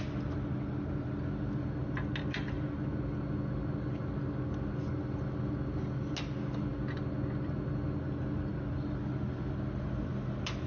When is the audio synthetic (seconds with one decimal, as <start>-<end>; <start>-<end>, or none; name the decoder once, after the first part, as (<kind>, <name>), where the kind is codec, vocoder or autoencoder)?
none